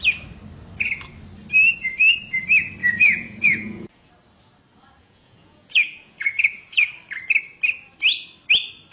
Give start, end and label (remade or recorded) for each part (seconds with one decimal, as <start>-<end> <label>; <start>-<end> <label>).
0.0-2.8 recorded; 2.8-4.1 remade; 4.1-5.0 recorded; 5.0-6.9 remade; 6.9-8.9 recorded